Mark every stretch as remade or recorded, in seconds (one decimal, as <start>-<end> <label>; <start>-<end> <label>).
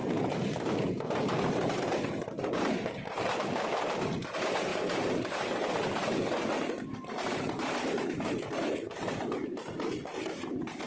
0.0-3.2 remade; 3.2-4.7 recorded; 4.7-6.0 remade; 6.0-6.9 recorded; 6.9-9.5 remade; 9.5-10.9 recorded